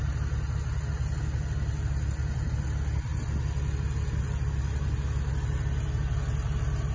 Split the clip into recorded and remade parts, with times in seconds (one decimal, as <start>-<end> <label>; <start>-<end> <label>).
0.0-6.9 recorded